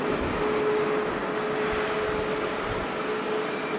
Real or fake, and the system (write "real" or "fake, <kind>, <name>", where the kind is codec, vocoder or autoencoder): real